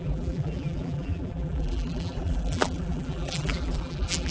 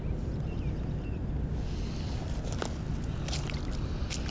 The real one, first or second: second